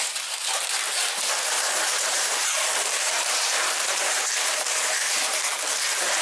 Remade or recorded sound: remade